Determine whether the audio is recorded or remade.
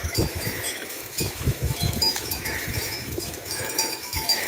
remade